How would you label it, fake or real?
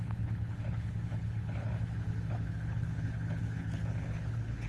fake